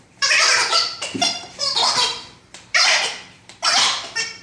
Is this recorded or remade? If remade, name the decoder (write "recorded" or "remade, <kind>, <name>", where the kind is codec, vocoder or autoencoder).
remade, vocoder, BigVGAN v2